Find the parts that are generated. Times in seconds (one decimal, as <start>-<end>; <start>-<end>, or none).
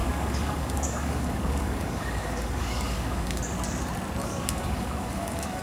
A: 0.0-3.4; 4.2-5.6